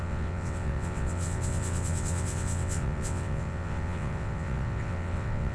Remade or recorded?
remade